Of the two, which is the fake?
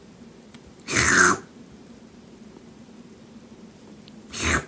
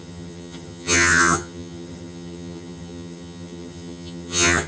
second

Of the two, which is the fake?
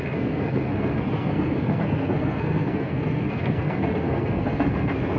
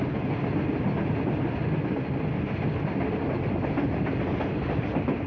first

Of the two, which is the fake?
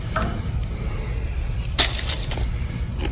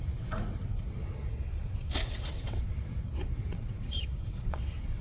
second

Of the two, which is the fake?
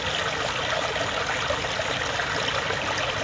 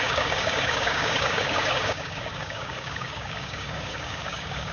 second